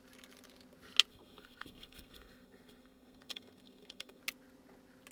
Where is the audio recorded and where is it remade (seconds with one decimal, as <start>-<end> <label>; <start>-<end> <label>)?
0.0-1.1 recorded; 1.1-4.2 remade; 4.2-5.1 recorded